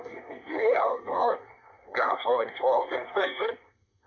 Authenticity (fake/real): fake